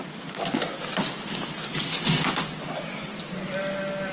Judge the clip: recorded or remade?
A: recorded